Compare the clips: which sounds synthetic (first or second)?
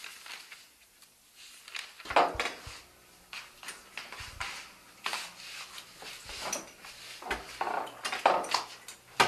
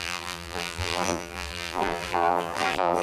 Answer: second